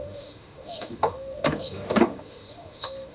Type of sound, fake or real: fake